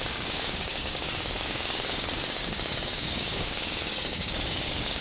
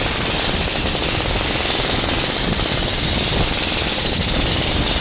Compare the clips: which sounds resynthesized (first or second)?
first